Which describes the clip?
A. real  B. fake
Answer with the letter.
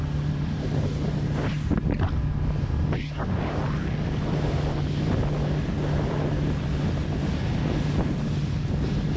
A